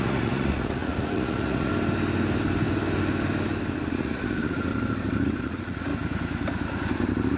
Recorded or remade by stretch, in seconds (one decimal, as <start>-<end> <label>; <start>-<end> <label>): 0.0-1.7 remade; 1.7-3.9 recorded; 3.9-4.7 remade; 4.7-5.4 recorded; 5.4-5.9 remade; 5.9-7.4 recorded